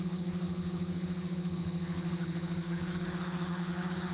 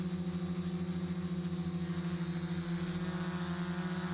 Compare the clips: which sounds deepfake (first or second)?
first